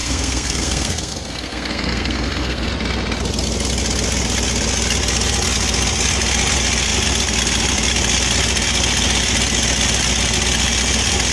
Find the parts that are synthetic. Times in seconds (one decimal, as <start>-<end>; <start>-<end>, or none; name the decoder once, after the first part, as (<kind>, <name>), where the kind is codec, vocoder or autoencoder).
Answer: 0.0-2.7 (codec, SNAC)